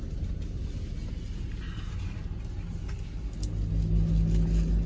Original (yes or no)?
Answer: yes